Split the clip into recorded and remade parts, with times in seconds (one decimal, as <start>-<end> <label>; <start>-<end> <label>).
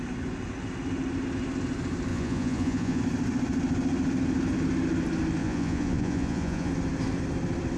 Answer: 0.0-2.1 recorded; 2.1-3.0 remade; 3.0-5.4 recorded; 5.4-6.7 remade; 6.7-7.8 recorded